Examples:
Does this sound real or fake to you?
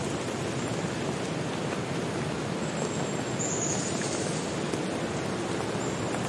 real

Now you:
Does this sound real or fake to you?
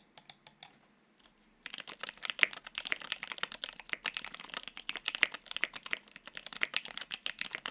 real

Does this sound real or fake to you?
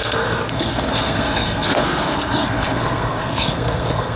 fake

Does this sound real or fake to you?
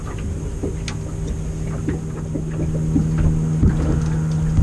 real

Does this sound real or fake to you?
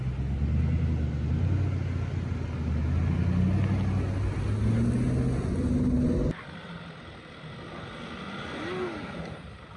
real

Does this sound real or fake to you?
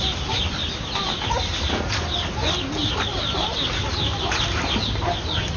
real